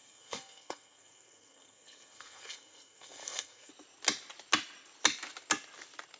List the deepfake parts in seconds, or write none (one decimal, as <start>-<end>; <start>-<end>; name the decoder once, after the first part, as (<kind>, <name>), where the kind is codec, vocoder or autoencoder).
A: 0.0-3.7 (codec, SNAC)